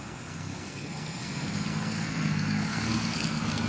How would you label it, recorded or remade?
remade